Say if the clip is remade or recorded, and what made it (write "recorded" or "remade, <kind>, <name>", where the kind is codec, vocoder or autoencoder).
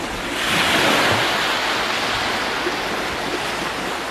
recorded